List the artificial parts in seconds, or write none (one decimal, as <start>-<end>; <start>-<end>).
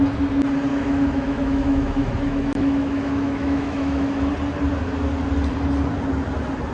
0.7-4.3